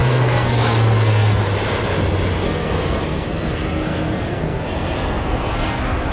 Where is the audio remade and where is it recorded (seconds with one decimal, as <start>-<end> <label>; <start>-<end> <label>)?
0.0-1.4 remade; 1.4-2.4 recorded; 2.4-6.1 remade

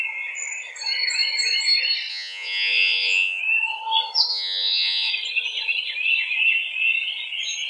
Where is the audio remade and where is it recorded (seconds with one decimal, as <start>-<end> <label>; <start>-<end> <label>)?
0.0-2.1 recorded; 2.1-3.4 remade; 3.4-4.3 recorded; 4.3-5.1 remade; 5.1-7.7 recorded

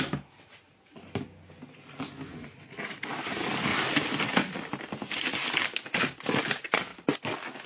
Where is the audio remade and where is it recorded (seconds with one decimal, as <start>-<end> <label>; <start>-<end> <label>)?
0.0-3.7 recorded; 3.7-6.5 remade; 6.5-6.9 recorded; 6.9-7.7 remade

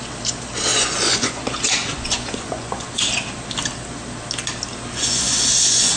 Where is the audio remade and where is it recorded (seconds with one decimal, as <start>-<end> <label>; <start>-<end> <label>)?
0.0-0.7 recorded; 0.7-3.0 remade; 3.0-5.0 recorded; 5.0-6.0 remade

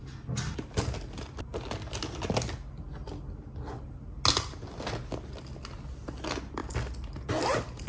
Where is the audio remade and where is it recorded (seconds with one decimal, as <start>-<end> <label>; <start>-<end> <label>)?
0.0-7.9 recorded